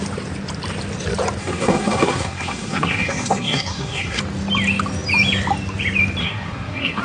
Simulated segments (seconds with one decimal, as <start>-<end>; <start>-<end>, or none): 1.4-4.2; 6.2-7.0